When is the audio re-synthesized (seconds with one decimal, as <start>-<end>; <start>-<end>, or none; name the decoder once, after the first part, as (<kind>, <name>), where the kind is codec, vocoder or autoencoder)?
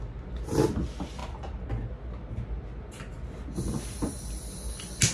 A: none